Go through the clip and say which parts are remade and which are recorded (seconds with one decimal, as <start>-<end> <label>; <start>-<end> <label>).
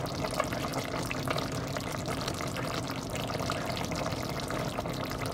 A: 0.0-5.3 recorded